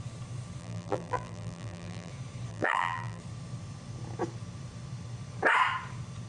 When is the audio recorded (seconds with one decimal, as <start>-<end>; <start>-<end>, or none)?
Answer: 0.0-0.6; 2.1-2.5; 3.2-6.3